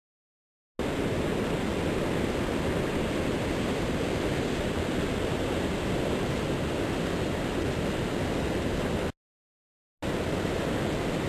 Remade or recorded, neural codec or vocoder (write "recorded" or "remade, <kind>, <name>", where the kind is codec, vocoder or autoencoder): recorded